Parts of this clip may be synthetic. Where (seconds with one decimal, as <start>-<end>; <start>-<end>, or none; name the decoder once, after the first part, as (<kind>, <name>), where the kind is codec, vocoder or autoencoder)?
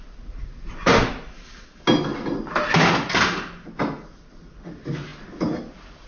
none